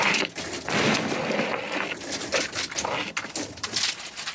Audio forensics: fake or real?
real